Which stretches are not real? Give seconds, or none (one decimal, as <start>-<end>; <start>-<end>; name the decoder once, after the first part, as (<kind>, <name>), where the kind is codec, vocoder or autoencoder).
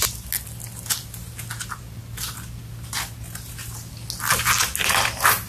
none